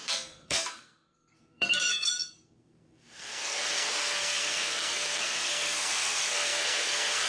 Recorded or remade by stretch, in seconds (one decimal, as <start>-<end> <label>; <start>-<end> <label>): 0.0-7.3 remade